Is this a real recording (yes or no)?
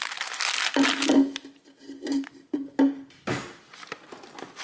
yes